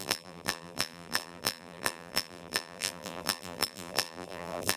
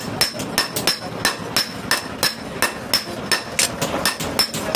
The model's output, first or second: first